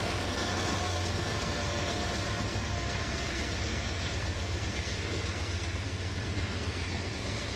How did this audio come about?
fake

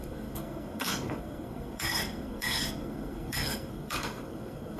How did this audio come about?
fake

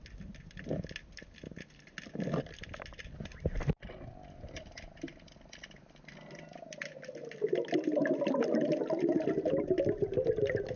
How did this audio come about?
real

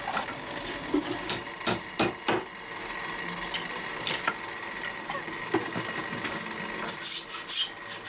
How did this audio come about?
real